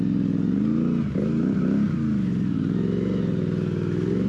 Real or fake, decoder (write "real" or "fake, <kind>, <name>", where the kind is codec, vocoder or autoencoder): real